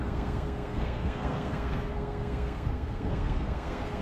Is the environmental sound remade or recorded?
remade